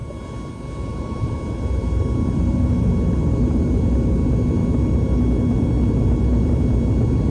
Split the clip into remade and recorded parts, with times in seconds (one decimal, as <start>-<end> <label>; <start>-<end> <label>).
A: 0.0-0.9 recorded; 0.9-1.6 remade; 1.6-7.3 recorded